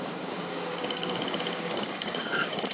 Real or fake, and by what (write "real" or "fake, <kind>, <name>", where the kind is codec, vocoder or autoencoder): fake, codec, DAC